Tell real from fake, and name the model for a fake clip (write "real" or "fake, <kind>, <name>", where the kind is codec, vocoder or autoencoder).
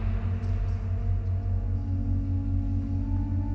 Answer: real